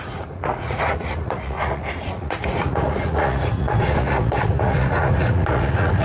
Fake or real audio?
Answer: fake